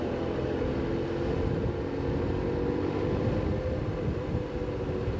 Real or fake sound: real